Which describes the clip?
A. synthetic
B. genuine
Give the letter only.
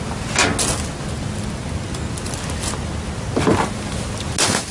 B